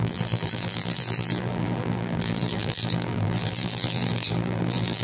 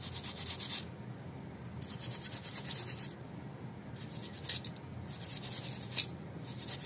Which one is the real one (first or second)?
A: second